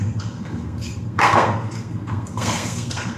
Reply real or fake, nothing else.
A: fake